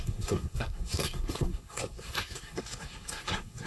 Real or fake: fake